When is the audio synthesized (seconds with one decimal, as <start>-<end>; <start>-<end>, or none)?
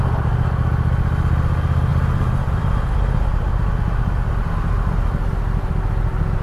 1.9-4.3